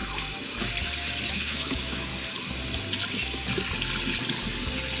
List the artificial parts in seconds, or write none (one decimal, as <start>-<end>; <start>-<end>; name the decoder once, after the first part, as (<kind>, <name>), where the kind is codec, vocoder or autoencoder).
1.3-2.1 (autoencoder, DAC-VAE)